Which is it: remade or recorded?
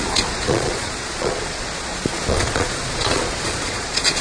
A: remade